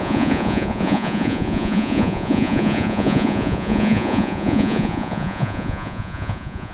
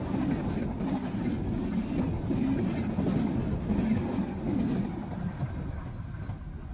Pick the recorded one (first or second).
second